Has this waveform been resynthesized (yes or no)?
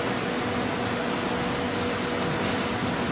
no